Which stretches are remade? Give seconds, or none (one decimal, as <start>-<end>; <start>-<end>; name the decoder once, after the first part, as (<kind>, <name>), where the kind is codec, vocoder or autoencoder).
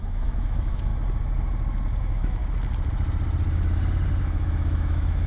0.0-0.9 (autoencoder, DAC-VAE); 2.0-2.4; 4.2-5.3